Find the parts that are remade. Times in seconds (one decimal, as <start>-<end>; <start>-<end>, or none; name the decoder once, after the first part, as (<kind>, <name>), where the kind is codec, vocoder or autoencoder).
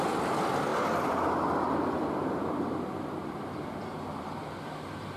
none